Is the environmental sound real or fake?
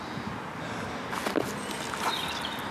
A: real